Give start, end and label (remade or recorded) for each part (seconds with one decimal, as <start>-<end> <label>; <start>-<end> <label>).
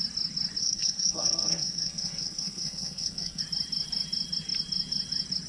0.0-0.6 recorded; 0.6-3.4 remade; 3.4-5.5 recorded